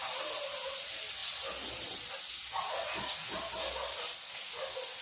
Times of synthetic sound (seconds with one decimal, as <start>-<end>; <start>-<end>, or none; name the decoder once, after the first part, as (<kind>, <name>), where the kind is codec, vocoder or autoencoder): none